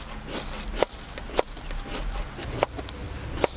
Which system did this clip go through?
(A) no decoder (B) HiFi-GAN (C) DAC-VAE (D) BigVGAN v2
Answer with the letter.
A